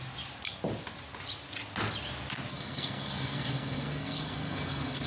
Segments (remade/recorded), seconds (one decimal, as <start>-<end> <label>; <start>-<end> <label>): 0.0-2.5 recorded; 2.5-5.1 remade